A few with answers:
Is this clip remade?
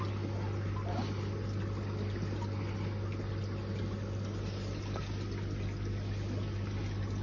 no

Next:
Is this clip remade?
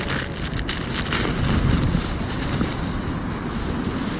no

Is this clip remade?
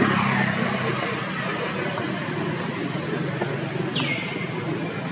no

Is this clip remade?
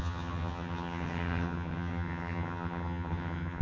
yes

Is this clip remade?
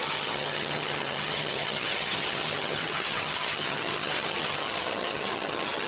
yes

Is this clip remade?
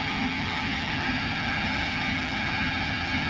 yes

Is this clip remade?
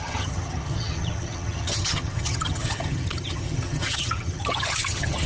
yes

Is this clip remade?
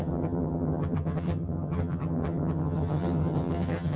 yes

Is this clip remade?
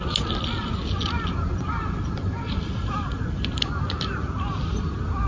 no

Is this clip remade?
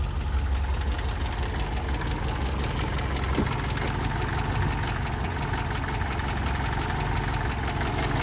no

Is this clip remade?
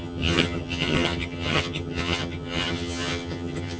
yes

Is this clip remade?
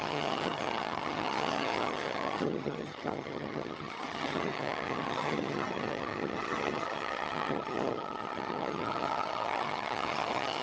yes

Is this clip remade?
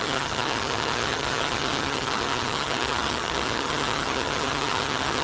yes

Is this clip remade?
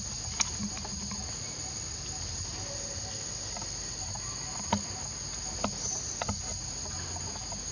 no